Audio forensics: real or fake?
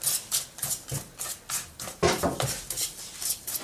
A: real